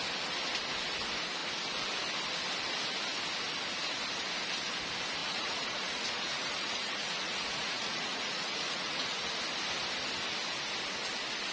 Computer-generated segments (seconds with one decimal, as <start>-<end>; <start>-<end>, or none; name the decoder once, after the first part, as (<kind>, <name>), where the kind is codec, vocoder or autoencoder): 5.2-9.4 (vocoder, Vocos)